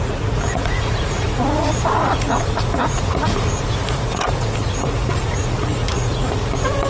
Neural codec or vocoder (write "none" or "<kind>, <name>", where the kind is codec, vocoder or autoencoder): vocoder, Vocos